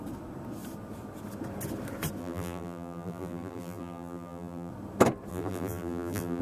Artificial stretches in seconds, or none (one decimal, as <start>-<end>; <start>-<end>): 2.2-4.7; 5.3-6.4